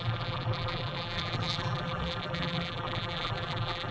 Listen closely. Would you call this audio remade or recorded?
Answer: remade